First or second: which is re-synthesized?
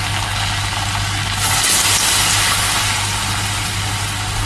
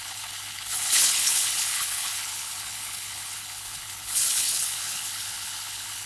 second